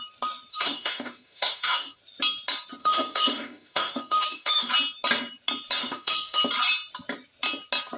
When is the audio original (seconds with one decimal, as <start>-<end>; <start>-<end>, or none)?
0.0-0.5; 2.0-2.8; 4.7-5.8; 6.4-8.0